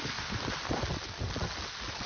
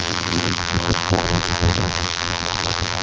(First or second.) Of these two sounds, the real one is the first